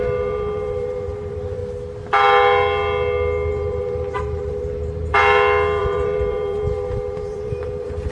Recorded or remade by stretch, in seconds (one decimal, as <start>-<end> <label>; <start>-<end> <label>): 0.0-1.6 remade; 1.6-3.5 recorded; 3.5-5.2 remade; 5.2-5.8 recorded; 5.8-8.1 remade